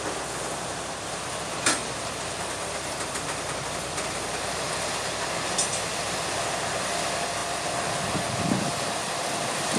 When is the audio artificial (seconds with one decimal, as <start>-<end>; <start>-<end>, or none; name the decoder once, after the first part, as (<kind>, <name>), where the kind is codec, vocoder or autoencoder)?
none